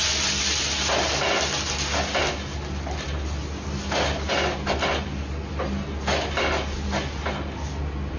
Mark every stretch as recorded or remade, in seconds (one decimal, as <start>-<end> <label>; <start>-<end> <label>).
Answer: 0.0-8.2 recorded